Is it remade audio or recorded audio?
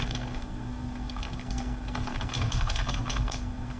remade